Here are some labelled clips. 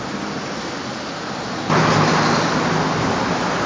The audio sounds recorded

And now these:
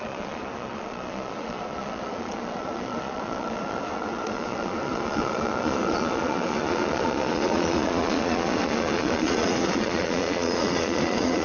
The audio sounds remade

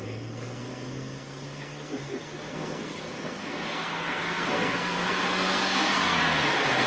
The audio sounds remade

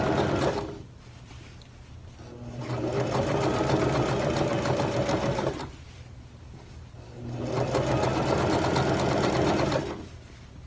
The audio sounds recorded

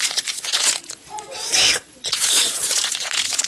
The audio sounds remade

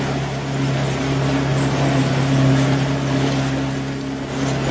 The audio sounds recorded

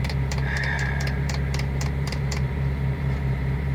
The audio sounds remade